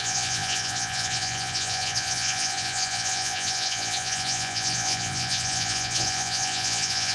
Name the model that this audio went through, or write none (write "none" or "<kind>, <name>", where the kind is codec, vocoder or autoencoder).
vocoder, Vocos